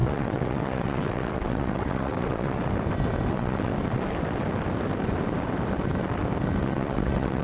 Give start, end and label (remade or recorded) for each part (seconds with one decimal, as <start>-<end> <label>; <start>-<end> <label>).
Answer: 0.0-2.6 remade; 2.6-3.3 recorded; 3.3-3.7 remade; 3.7-6.6 recorded; 6.6-7.4 remade